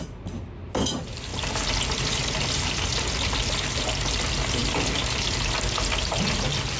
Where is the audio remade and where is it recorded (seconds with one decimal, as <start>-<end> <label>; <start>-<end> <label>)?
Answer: 0.0-6.8 recorded